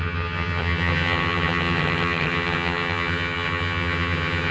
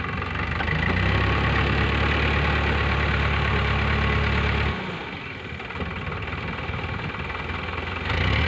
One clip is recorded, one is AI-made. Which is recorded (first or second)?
second